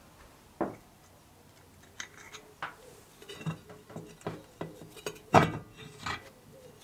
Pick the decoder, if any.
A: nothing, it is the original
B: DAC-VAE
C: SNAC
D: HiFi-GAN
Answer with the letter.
A